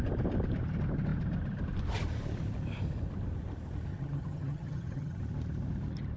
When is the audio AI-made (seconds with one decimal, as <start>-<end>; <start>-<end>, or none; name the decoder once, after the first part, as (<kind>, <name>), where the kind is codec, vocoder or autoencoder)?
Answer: 3.9-5.2 (vocoder, HiFi-GAN)